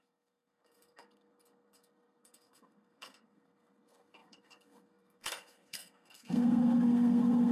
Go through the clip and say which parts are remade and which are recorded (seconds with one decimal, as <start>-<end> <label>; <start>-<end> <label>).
0.0-7.5 remade